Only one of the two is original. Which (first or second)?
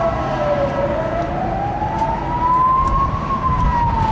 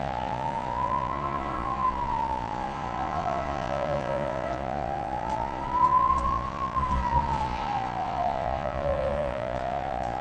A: first